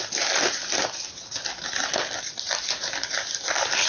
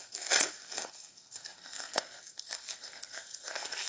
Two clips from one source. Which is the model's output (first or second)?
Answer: second